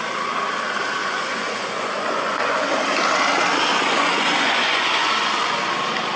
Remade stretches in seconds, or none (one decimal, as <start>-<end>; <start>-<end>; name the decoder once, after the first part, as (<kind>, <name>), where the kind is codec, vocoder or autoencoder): 1.0-2.7 (vocoder, Vocos); 3.7-5.7